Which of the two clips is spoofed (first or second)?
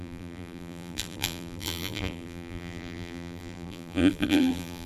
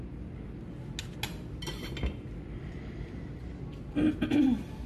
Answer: first